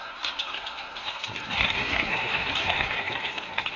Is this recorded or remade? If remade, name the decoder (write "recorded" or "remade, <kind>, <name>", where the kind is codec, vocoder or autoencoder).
remade, codec, SNAC